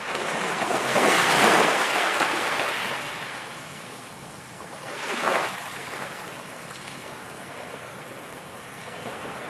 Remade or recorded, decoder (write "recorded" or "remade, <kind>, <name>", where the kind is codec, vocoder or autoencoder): remade, codec, SNAC